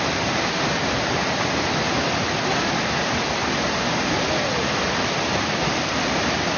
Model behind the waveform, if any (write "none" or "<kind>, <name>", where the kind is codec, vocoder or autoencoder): none